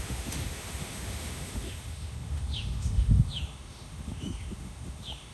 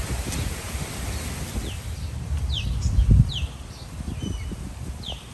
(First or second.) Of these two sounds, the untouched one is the second